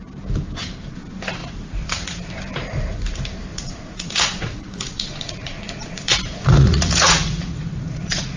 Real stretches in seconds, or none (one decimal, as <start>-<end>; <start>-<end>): 0.0-1.4; 2.3-3.5